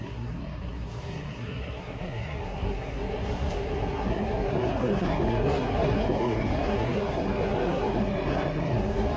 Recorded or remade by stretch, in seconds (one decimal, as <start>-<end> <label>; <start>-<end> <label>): 0.0-9.2 remade